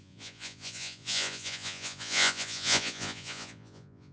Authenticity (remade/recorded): remade